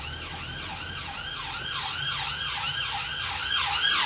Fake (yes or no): no